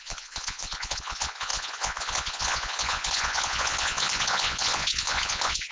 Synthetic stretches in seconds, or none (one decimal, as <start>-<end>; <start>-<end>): 0.0-5.7